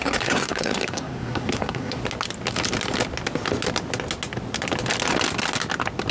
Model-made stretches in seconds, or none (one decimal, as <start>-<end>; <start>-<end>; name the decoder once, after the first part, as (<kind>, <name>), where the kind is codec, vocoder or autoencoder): 0.0-2.0 (codec, SNAC)